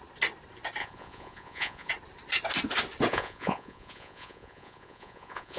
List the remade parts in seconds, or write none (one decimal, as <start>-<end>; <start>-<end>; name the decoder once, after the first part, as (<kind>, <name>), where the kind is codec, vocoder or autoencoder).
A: 0.8-1.9 (vocoder, Vocos); 3.1-5.6